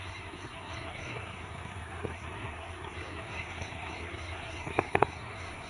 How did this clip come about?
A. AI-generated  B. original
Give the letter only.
A